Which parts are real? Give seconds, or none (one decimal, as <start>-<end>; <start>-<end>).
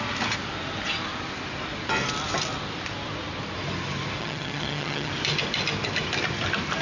0.0-4.2; 5.1-6.8